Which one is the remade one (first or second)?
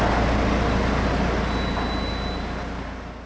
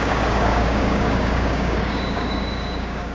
second